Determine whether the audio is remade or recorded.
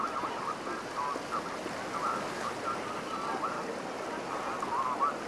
recorded